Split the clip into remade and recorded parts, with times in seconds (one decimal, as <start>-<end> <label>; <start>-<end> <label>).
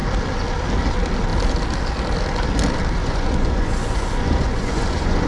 0.0-3.0 recorded; 3.0-5.3 remade